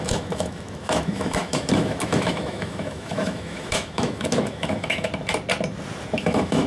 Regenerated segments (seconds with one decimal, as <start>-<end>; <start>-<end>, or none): 0.0-5.1; 6.2-6.7